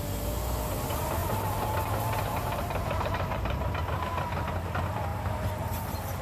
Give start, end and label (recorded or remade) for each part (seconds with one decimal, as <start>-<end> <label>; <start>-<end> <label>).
0.0-1.2 recorded; 1.2-3.7 remade; 3.7-5.1 recorded; 5.1-6.2 remade